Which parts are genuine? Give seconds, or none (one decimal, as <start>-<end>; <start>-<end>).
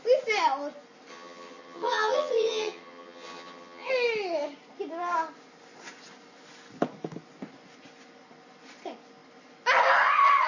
0.0-1.1; 3.9-10.5